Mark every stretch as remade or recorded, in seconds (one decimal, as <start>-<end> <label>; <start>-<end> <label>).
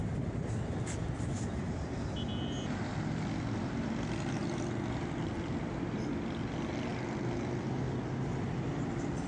0.0-9.3 recorded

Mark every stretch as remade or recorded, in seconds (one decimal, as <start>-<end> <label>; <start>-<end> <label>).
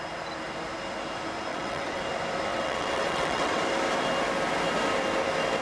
0.0-1.5 recorded; 1.5-2.0 remade; 2.0-2.5 recorded; 2.5-3.6 remade; 3.6-5.6 recorded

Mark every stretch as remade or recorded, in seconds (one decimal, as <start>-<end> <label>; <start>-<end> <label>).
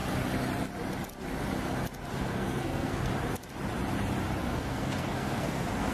0.0-2.2 recorded; 2.2-3.1 remade; 3.1-4.4 recorded; 4.4-5.9 remade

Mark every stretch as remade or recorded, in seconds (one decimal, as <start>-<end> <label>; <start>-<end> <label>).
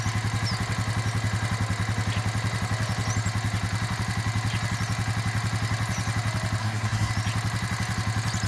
0.0-6.6 recorded; 6.6-7.1 remade; 7.1-8.5 recorded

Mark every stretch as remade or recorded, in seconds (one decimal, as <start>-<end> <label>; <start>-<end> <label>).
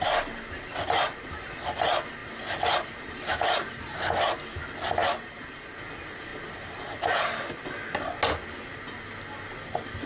0.0-2.2 recorded; 2.2-3.7 remade; 3.7-5.0 recorded; 5.0-5.8 remade; 5.8-10.1 recorded